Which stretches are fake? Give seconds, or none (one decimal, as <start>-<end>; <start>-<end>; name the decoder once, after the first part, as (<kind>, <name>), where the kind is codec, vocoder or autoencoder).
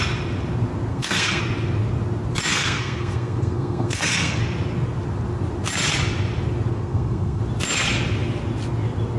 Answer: 0.9-1.4 (codec, SNAC); 2.5-4.4; 6.7-7.4